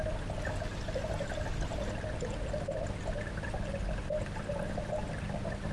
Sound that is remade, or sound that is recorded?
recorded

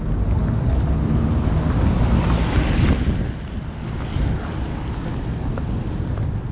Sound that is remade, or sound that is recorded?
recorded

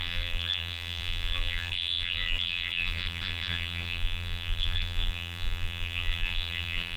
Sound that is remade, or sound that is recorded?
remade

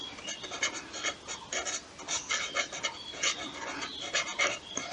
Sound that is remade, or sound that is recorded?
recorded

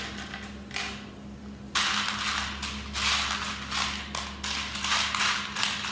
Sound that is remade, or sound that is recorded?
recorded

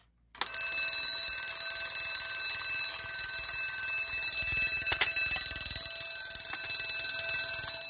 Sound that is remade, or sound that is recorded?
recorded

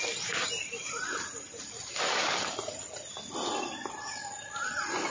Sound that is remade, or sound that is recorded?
recorded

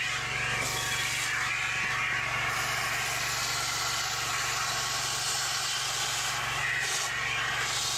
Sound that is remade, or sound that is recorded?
recorded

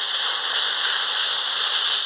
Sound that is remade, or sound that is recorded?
recorded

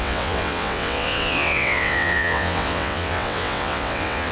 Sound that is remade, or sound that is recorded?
remade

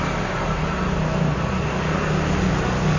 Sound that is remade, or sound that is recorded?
recorded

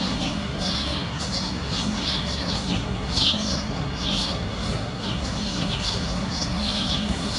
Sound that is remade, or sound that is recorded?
remade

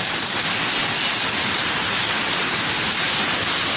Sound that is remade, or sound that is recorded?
recorded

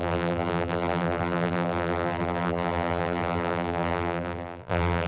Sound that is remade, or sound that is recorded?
remade